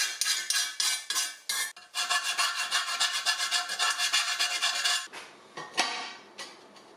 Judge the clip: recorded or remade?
recorded